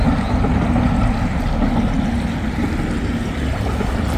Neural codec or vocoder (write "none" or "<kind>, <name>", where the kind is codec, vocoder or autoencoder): none